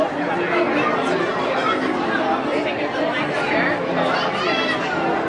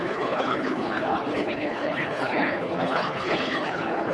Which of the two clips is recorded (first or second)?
first